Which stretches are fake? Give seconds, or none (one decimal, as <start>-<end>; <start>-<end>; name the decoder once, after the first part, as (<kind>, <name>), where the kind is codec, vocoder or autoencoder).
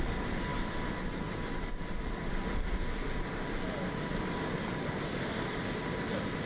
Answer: none